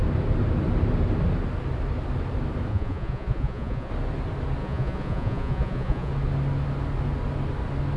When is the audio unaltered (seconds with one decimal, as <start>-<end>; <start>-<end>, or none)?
0.0-2.7; 3.9-4.6; 6.1-8.0